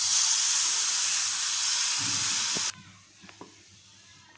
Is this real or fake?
real